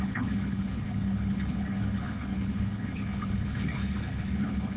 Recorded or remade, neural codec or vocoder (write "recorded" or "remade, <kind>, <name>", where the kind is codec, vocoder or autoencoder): remade, codec, HILCodec